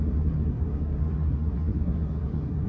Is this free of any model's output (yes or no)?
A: no